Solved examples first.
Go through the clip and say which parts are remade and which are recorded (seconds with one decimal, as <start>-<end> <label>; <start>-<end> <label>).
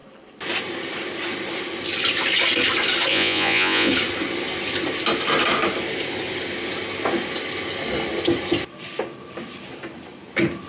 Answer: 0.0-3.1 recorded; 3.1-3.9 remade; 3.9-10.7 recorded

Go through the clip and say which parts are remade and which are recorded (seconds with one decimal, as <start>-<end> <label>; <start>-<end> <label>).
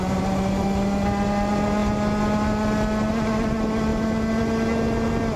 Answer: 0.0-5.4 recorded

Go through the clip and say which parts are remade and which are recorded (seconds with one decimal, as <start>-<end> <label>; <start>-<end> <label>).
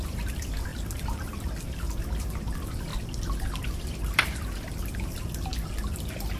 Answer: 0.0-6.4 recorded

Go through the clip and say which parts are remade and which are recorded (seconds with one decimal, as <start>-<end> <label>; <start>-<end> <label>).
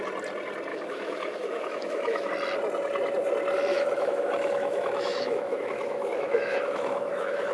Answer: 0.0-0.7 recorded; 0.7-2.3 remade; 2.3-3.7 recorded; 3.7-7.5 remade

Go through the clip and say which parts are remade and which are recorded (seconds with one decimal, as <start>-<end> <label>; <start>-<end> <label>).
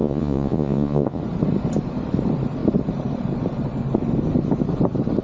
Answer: 0.0-1.2 remade; 1.2-5.2 recorded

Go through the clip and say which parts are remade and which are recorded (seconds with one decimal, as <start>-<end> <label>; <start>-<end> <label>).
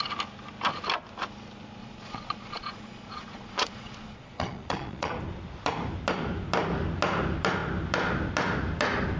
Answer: 0.0-1.8 recorded; 1.8-5.1 remade; 5.1-9.2 recorded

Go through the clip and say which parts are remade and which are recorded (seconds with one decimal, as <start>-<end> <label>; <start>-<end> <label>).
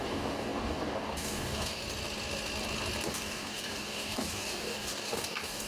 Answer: 0.0-1.8 remade; 1.8-3.1 recorded; 3.1-5.7 remade